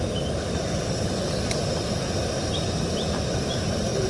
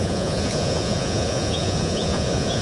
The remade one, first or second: second